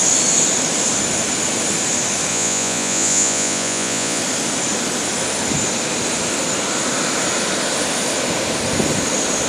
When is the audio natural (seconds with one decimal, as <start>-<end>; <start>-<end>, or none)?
0.0-2.3; 4.2-9.5